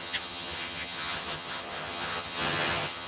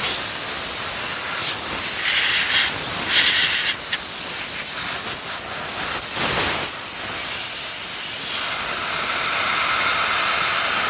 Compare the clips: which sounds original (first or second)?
second